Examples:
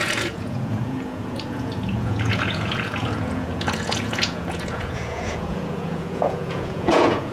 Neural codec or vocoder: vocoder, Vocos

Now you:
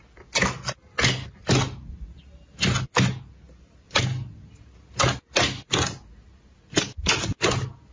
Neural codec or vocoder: none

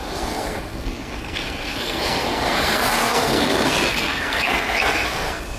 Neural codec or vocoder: codec, SNAC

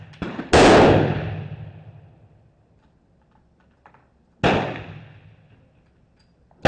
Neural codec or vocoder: none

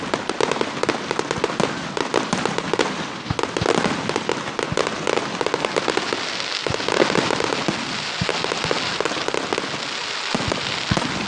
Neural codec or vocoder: none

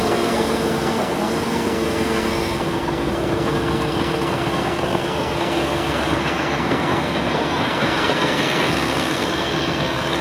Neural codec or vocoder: codec, SNAC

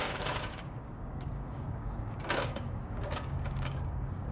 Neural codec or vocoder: codec, DAC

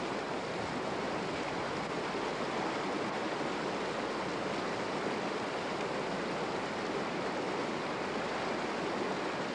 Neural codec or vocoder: none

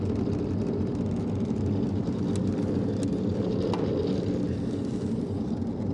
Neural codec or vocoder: none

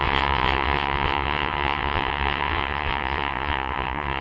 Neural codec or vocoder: vocoder, WaveNeXt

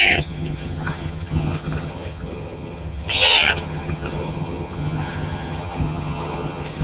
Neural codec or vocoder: vocoder, HiFi-GAN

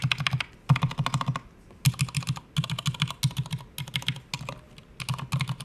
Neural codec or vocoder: none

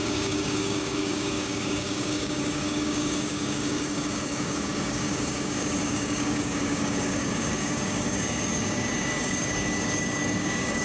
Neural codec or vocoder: codec, DAC